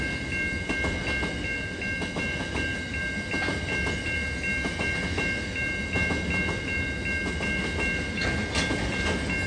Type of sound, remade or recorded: recorded